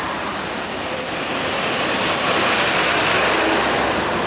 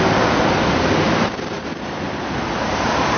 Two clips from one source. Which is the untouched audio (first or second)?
first